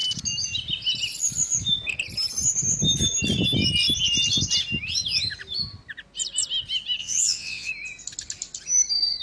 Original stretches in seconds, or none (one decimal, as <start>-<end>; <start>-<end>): 0.0-7.0; 7.7-9.2